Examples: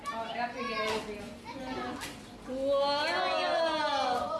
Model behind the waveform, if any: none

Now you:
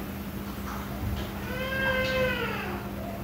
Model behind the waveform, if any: none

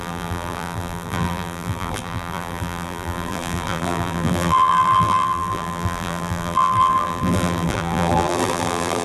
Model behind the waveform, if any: vocoder, BigVGAN v2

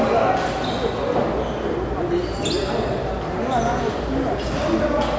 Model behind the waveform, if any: none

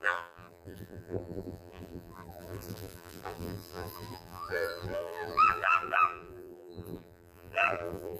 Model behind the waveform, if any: vocoder, BigVGAN v2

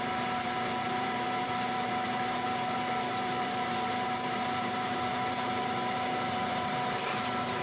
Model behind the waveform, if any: vocoder, BigVGAN v2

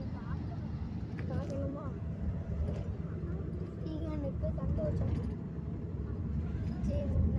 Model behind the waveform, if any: vocoder, BigVGAN v2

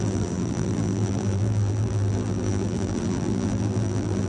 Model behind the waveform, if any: vocoder, BigVGAN v2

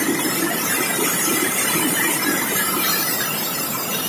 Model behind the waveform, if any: vocoder, BigVGAN v2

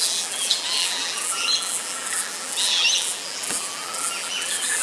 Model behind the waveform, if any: vocoder, BigVGAN v2